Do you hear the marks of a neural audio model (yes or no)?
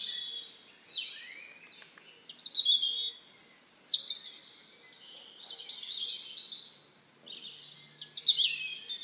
no